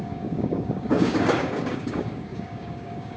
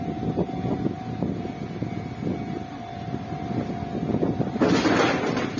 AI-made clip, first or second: first